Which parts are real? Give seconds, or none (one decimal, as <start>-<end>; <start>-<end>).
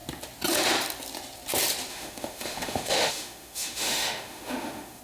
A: 0.0-1.9